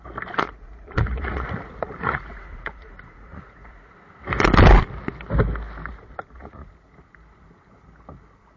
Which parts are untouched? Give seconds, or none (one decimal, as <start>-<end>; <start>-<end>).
0.0-0.5; 3.9-5.9; 6.7-8.6